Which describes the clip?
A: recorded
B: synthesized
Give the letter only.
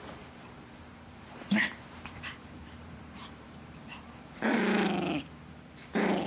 B